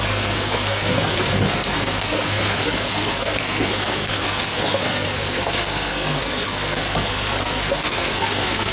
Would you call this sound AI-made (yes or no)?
yes